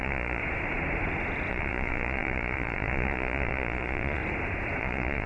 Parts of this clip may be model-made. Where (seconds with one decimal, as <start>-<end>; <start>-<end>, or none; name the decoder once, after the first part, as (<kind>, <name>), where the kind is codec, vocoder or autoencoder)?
0.0-0.4 (vocoder, Vocos); 1.5-4.2; 4.8-5.3